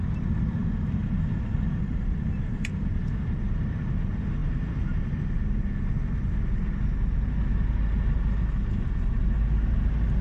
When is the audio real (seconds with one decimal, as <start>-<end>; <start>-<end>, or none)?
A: 0.0-1.0; 2.7-10.2